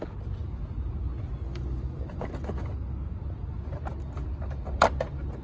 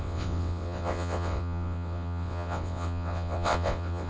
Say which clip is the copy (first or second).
second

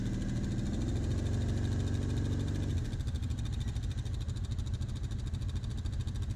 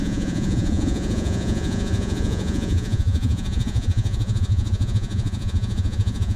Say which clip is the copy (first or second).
second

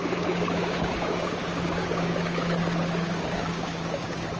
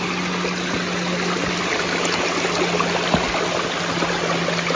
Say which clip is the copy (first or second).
first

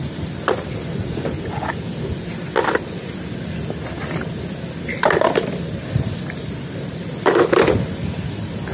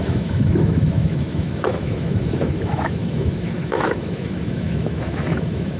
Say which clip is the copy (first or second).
second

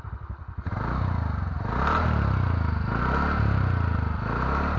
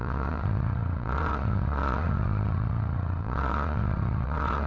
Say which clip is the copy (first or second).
second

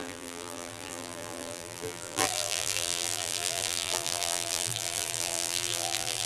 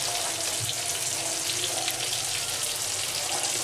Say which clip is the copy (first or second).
first